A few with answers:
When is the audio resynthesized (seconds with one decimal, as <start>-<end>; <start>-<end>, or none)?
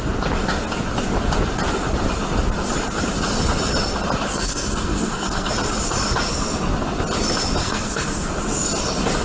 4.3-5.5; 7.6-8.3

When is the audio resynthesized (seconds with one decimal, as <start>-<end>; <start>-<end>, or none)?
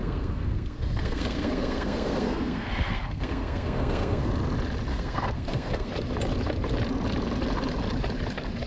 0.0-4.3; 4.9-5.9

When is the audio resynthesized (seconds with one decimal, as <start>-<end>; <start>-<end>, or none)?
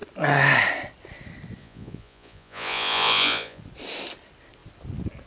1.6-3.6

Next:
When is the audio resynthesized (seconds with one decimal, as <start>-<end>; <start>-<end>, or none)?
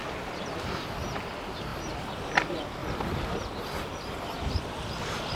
0.0-1.2; 1.7-2.2; 2.8-4.9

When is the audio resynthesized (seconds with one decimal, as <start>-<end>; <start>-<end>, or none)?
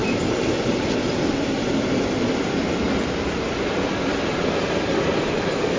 none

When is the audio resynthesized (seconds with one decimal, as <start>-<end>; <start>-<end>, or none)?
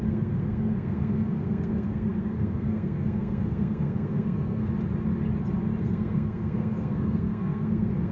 0.0-4.7; 5.8-8.1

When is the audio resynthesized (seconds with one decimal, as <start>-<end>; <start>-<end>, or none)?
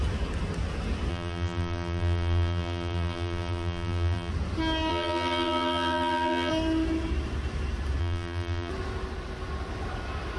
1.1-4.3; 4.9-6.5; 8.0-8.7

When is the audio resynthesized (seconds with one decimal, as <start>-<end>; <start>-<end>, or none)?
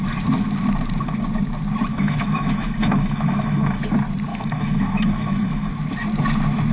1.9-3.8; 4.3-5.7